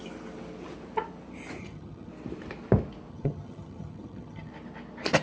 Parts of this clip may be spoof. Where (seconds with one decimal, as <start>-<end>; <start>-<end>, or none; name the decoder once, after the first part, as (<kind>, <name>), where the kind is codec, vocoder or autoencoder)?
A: 1.6-2.1 (vocoder, HiFi-GAN); 3.1-4.5